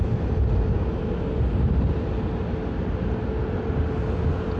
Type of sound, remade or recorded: recorded